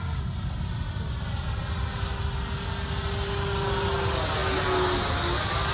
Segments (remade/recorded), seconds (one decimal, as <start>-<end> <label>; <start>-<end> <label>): 0.0-5.7 recorded